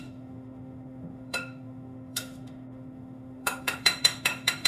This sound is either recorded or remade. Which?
remade